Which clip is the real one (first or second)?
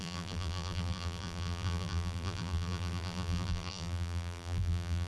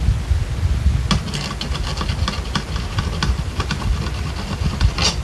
second